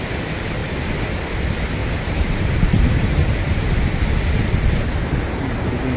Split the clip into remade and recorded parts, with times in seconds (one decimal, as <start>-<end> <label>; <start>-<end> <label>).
0.0-1.8 recorded; 1.8-3.8 remade; 3.8-6.0 recorded